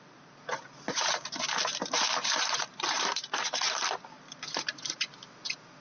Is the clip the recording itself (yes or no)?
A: no